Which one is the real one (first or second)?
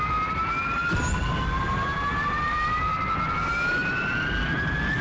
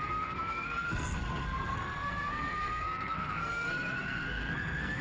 first